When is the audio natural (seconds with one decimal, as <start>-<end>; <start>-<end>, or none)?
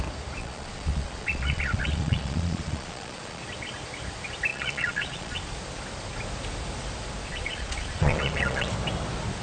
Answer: 0.0-0.4; 3.4-4.5; 5.4-7.3; 8.7-9.4